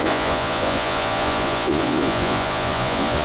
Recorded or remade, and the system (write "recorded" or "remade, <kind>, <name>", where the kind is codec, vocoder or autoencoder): remade, vocoder, Vocos